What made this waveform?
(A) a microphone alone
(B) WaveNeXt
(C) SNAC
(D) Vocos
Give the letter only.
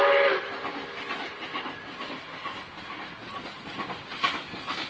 A